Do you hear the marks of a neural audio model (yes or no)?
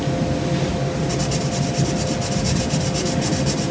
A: no